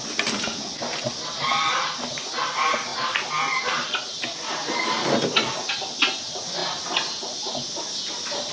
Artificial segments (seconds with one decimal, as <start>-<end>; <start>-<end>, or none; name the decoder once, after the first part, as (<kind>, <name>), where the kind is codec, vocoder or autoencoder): none